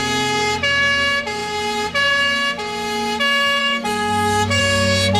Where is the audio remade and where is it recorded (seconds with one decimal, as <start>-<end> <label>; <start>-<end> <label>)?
0.0-3.6 recorded; 3.6-4.6 remade; 4.6-5.2 recorded